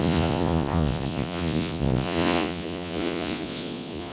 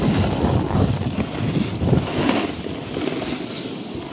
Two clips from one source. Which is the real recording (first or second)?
second